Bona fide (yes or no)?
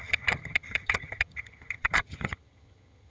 no